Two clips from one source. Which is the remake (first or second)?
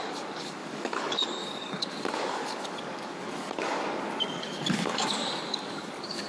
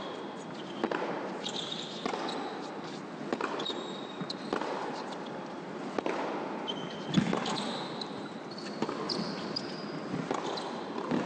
first